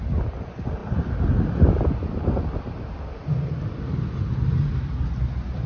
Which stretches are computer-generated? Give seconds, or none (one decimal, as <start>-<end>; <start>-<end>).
none